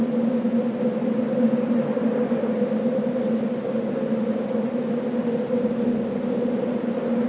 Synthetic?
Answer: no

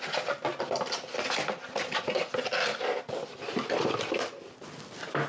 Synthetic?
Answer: no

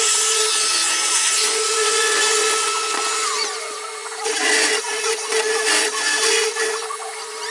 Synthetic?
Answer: yes